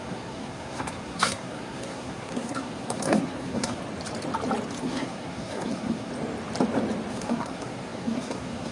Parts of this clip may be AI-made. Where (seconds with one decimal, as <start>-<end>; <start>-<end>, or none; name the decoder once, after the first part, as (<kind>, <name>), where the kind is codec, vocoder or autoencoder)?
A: 0.0-3.8 (codec, SNAC); 4.8-6.1; 7.1-8.7